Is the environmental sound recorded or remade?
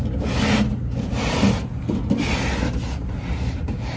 recorded